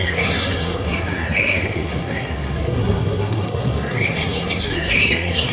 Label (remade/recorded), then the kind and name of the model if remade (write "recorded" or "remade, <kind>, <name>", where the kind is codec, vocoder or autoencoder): remade, codec, SNAC